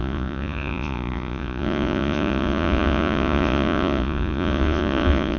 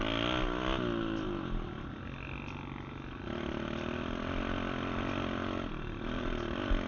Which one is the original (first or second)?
second